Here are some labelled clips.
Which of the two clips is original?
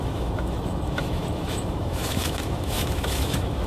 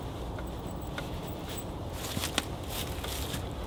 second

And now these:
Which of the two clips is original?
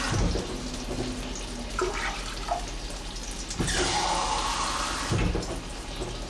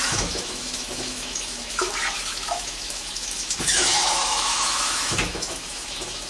first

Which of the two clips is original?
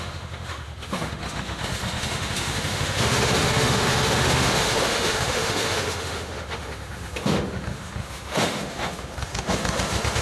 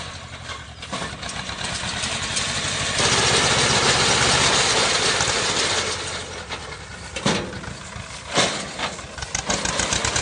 second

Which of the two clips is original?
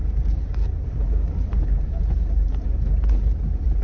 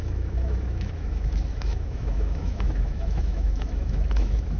first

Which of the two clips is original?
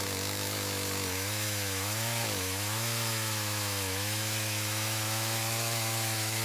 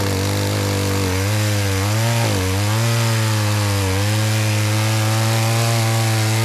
second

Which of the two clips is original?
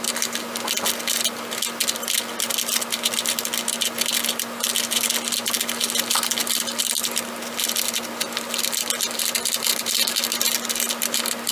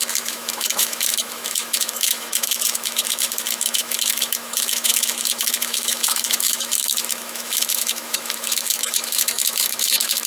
first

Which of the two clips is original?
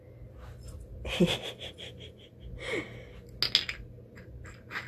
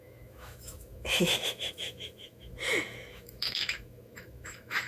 first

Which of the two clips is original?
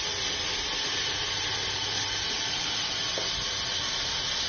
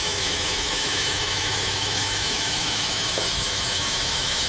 first